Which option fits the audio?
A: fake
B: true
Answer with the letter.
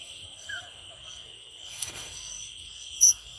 A